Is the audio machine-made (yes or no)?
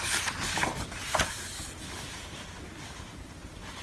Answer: no